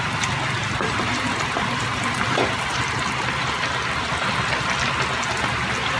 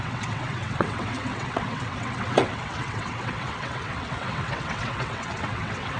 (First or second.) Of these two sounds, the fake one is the second